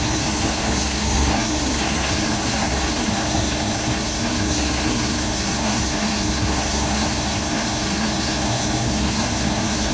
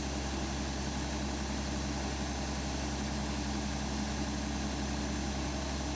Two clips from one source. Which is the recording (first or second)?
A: second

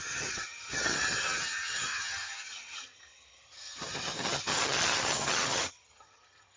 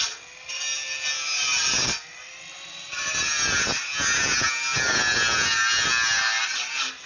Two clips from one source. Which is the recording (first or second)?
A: second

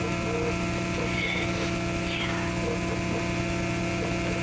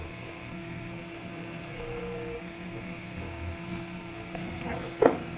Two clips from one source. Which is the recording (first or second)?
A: first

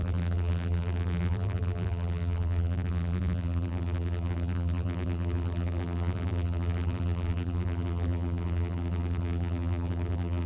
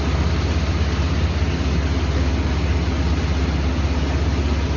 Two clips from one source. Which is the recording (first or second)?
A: second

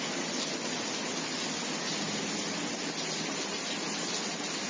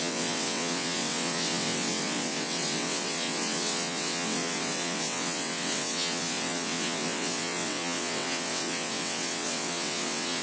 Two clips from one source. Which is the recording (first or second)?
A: first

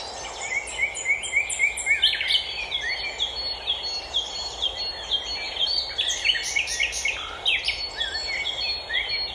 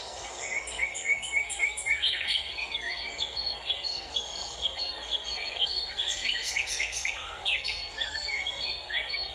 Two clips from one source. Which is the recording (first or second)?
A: first